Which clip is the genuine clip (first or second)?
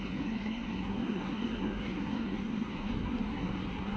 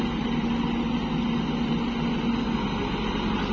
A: second